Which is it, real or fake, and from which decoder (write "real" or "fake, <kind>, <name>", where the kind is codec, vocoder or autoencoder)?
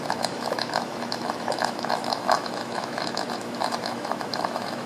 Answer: fake, autoencoder, DAC-VAE